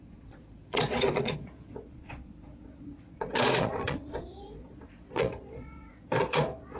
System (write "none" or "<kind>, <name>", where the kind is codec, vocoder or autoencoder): vocoder, Vocos